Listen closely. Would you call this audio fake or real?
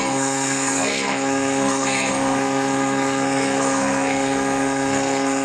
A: fake